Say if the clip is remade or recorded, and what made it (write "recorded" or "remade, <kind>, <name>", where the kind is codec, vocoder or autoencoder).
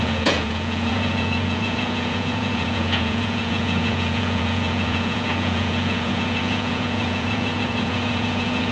remade, vocoder, Vocos